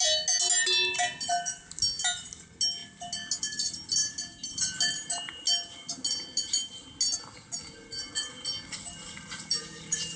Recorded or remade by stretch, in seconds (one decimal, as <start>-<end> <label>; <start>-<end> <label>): 0.0-10.2 recorded